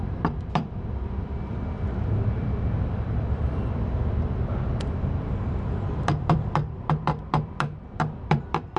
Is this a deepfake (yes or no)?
yes